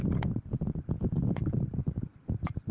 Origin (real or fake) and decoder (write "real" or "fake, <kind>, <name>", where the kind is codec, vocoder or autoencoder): real